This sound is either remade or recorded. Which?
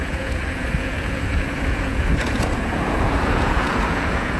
remade